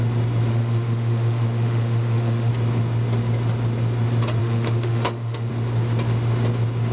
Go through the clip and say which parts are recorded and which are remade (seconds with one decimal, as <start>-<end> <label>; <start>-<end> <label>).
0.0-0.5 recorded; 0.5-2.5 remade; 2.5-4.4 recorded; 4.4-5.5 remade; 5.5-6.9 recorded